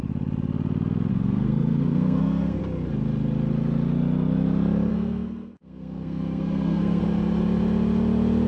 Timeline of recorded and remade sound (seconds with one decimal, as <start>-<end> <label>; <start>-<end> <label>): 0.0-1.1 recorded; 1.1-2.6 remade; 2.6-4.9 recorded; 4.9-7.0 remade; 7.0-8.5 recorded